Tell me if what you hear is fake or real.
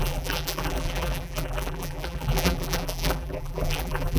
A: fake